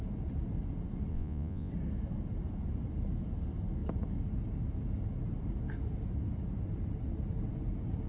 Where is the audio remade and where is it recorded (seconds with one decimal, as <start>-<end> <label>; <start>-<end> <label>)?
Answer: 0.0-1.1 recorded; 1.1-1.7 remade; 1.7-8.1 recorded